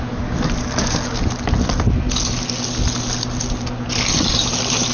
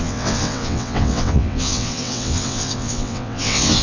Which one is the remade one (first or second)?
second